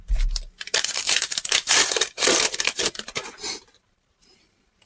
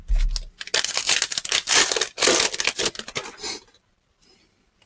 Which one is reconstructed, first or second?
first